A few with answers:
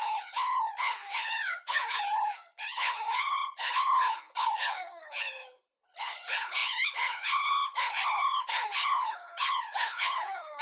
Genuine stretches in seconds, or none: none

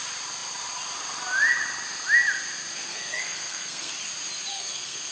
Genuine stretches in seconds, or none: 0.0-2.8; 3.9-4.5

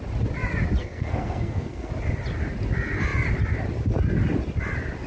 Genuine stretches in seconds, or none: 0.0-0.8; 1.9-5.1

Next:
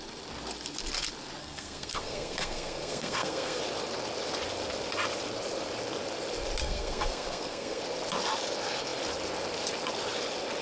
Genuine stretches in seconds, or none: 0.0-1.4; 3.6-6.6; 7.8-10.6